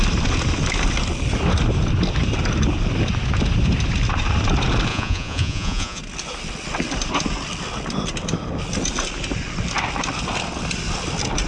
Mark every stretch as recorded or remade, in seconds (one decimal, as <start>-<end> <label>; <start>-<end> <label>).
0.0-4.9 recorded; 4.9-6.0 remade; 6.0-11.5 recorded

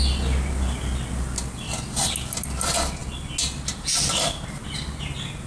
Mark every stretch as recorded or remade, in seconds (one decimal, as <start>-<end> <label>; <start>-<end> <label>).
0.0-5.5 recorded

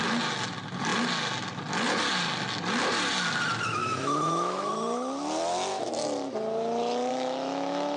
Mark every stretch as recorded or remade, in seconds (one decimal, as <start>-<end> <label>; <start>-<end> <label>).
0.0-3.8 recorded; 3.8-4.7 remade; 4.7-7.1 recorded; 7.1-8.0 remade

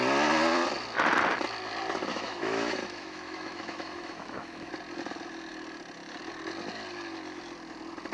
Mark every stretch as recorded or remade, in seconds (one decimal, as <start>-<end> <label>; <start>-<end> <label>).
0.0-2.1 recorded; 2.1-4.7 remade; 4.7-8.1 recorded